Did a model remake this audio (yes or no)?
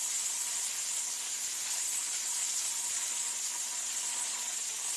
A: no